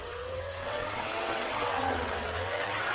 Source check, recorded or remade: remade